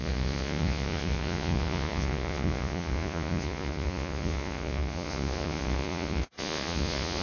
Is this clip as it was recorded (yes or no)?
no